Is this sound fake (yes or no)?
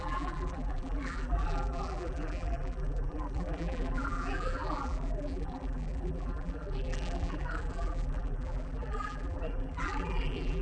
yes